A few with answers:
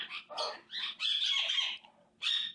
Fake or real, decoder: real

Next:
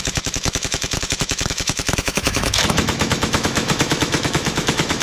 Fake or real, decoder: fake, autoencoder, DAC-VAE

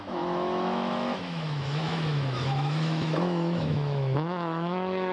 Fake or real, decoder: fake, autoencoder, DAC-VAE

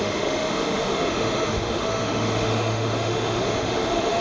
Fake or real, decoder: fake, autoencoder, DAC-VAE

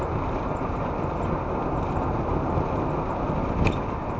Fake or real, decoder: real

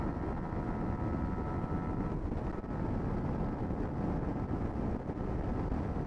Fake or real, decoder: real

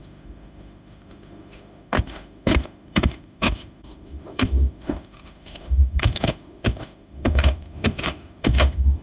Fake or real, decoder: fake, autoencoder, DAC-VAE